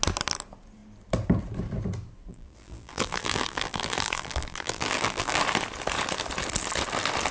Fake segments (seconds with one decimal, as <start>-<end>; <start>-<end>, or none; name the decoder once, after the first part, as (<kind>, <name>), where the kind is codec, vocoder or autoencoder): 2.3-5.4 (vocoder, BigVGAN v2)